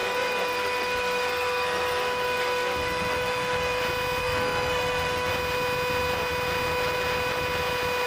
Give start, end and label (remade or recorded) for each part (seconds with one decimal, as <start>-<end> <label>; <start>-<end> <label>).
0.0-3.8 remade; 3.8-4.2 recorded; 4.2-5.3 remade; 5.3-8.1 recorded